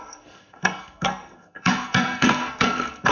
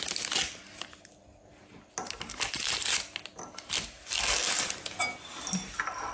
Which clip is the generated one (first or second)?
first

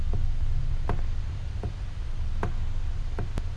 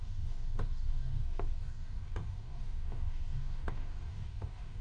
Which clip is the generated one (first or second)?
second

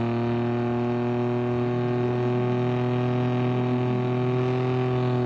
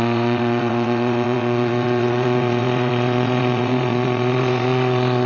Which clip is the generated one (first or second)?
second